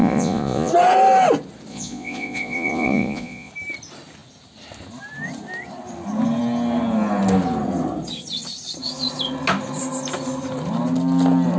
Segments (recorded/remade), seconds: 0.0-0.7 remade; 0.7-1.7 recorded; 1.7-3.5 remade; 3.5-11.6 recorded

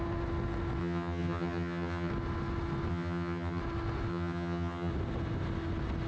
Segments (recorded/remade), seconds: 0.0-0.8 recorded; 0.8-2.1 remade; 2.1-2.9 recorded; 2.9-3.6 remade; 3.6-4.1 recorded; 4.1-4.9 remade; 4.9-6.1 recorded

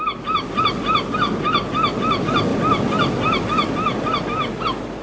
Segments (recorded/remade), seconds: 0.0-5.0 recorded

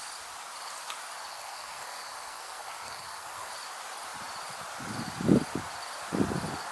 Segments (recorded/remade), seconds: 0.0-1.3 recorded; 1.3-3.5 remade; 3.5-6.7 recorded

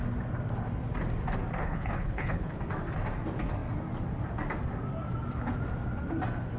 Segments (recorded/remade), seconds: 0.0-1.6 recorded; 1.6-2.6 remade; 2.6-6.6 recorded